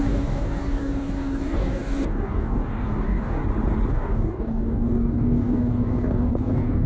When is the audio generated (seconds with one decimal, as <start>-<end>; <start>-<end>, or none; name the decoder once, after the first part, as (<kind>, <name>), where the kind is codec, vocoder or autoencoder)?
0.0-3.4 (codec, DAC); 3.9-6.9